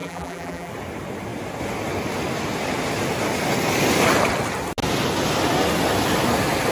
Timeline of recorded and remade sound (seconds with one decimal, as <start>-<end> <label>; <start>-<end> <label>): 0.0-0.7 remade; 0.7-6.7 recorded